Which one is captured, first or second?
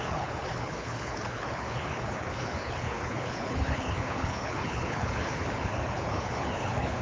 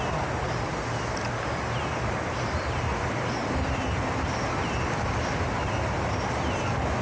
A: second